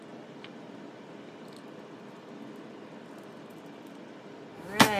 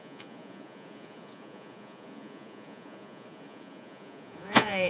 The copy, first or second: second